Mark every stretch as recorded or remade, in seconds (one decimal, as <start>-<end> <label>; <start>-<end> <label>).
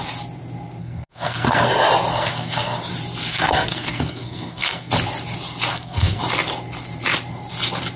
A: 0.0-0.8 recorded; 0.8-1.7 remade; 1.7-2.1 recorded; 2.1-2.8 remade; 2.8-3.3 recorded; 3.3-4.9 remade; 4.9-5.7 recorded; 5.7-6.2 remade; 6.2-8.0 recorded